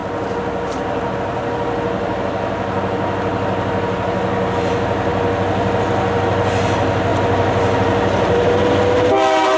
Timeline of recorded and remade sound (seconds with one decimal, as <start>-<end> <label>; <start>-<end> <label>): 0.0-9.6 recorded